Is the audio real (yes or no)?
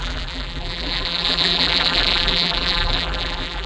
no